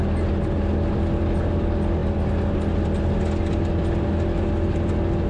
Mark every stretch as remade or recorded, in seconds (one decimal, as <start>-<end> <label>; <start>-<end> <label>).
0.0-5.3 recorded